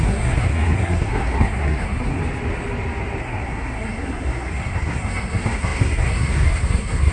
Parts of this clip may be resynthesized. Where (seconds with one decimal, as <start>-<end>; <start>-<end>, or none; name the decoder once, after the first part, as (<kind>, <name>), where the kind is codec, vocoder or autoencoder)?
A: 0.0-2.2 (codec, SNAC); 3.2-7.1